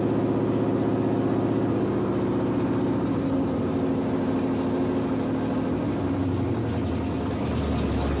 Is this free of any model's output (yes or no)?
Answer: yes